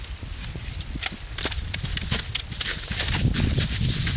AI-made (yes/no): no